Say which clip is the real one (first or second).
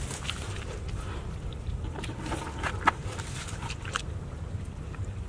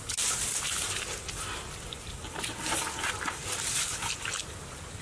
second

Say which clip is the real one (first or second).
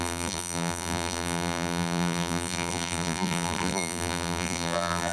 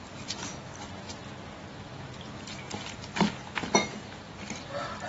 second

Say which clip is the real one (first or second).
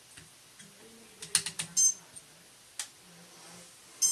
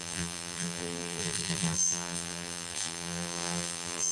first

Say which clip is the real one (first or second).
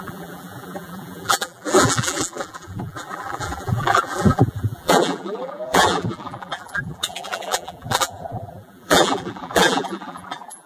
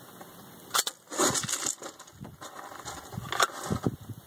second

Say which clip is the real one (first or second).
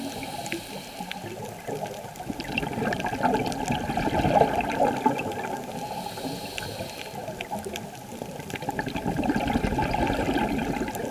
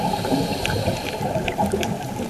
first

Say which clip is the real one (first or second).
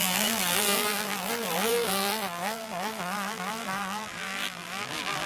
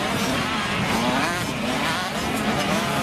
second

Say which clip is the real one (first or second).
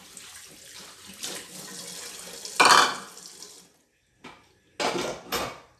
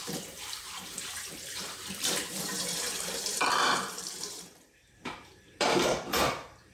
first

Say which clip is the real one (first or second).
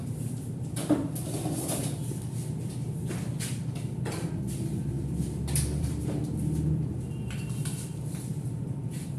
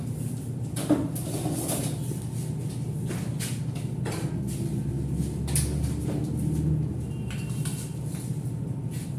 second